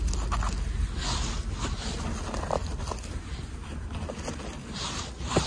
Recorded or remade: recorded